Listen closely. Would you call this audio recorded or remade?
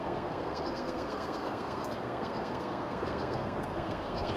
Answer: remade